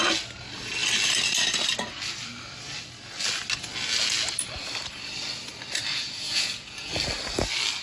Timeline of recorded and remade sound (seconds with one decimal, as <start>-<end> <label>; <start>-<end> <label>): 0.0-5.9 recorded; 5.9-6.9 remade; 6.9-7.8 recorded